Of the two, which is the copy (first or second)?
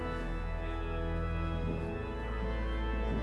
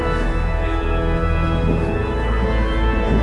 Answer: second